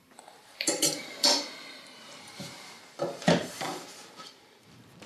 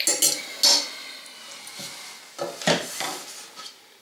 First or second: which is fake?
first